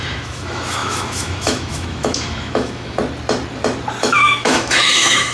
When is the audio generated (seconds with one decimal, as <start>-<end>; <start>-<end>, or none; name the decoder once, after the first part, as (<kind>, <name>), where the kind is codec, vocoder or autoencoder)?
0.0-3.0 (autoencoder, DAC-VAE); 4.0-5.3